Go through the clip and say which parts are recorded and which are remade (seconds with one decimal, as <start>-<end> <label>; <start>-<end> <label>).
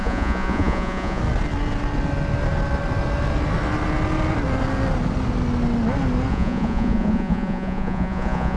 0.0-1.2 remade; 1.2-6.3 recorded; 6.3-8.6 remade